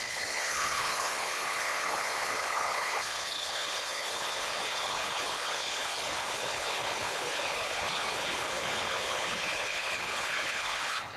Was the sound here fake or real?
fake